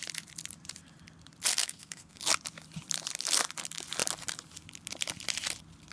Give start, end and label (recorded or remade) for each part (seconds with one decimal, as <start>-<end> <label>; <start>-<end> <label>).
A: 0.0-1.5 recorded; 1.5-2.2 remade; 2.2-5.9 recorded